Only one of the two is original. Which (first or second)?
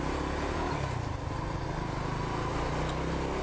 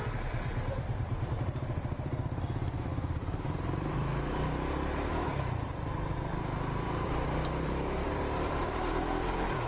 first